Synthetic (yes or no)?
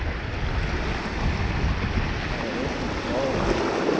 no